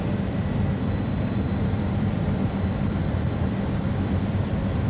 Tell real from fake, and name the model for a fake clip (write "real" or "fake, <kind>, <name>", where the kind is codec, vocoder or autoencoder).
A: fake, vocoder, BigVGAN v2